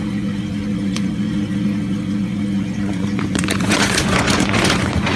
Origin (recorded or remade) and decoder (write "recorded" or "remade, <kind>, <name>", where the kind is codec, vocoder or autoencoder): remade, vocoder, Vocos